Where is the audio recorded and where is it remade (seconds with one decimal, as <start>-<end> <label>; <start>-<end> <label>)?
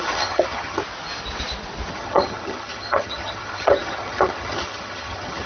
0.0-0.8 remade; 0.8-1.9 recorded; 1.9-5.5 remade